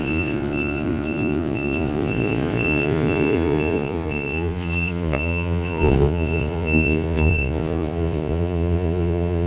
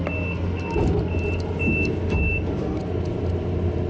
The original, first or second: second